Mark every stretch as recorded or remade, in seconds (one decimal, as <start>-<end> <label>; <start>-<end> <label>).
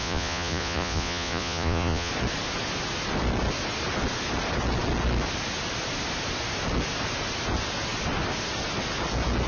0.0-2.1 remade; 2.1-9.5 recorded